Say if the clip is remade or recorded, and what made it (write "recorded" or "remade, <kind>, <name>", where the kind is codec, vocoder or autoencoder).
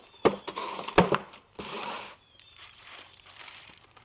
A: remade, vocoder, BigVGAN v2